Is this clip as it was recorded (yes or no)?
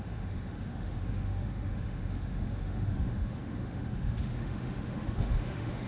no